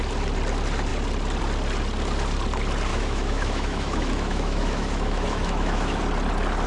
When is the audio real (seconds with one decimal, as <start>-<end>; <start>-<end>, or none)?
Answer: 0.0-2.9; 6.0-6.7